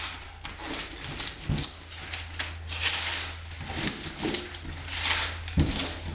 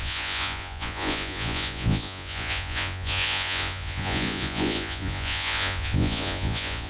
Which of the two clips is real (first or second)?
first